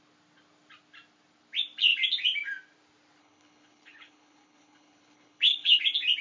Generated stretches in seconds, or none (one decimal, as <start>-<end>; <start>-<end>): 3.2-5.8

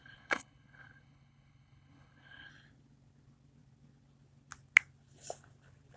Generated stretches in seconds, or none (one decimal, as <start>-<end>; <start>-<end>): 0.0-2.5

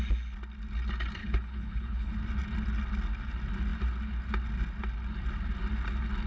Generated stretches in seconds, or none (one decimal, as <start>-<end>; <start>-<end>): 1.2-2.1